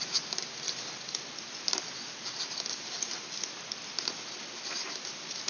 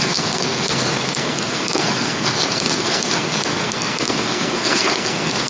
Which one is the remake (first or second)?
second